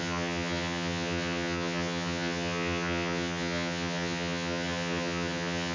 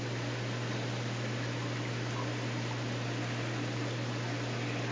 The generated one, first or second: first